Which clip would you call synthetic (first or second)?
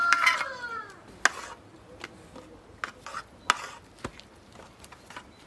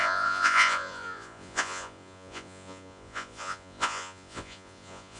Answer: second